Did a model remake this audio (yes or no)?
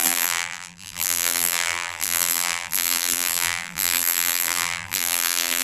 yes